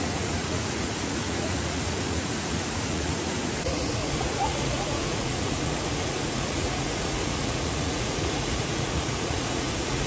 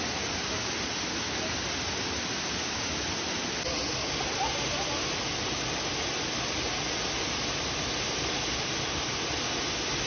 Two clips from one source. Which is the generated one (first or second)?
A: first